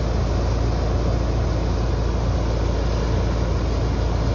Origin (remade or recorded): recorded